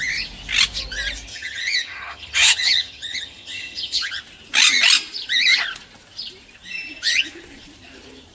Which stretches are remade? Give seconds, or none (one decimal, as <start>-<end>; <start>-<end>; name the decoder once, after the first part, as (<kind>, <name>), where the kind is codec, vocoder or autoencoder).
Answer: 1.3-4.2 (vocoder, HiFi-GAN)